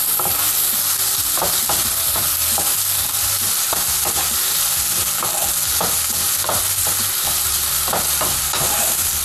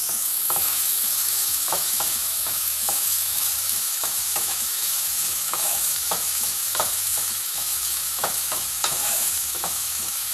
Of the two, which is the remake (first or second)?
second